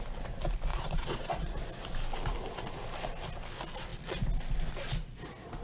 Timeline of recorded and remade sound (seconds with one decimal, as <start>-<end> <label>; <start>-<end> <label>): 0.0-0.7 recorded; 0.7-1.6 remade; 1.6-5.6 recorded